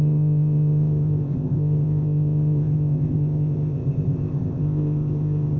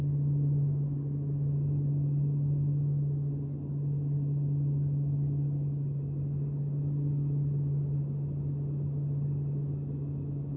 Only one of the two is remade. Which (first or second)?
first